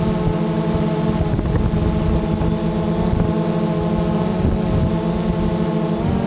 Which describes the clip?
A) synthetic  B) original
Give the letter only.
B